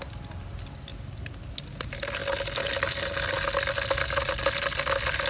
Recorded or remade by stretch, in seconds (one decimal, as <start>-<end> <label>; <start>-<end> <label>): 0.0-5.3 recorded